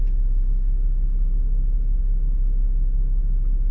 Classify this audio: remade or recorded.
recorded